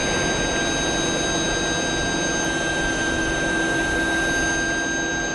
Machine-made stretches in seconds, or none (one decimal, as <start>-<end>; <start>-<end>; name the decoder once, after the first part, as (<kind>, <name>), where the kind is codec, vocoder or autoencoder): none